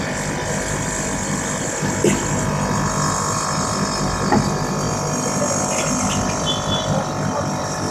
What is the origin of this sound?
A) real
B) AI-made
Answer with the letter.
A